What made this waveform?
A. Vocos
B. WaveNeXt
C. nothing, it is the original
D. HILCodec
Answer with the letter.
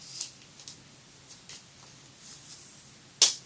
C